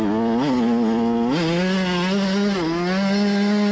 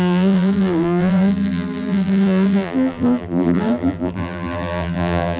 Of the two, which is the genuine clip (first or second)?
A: first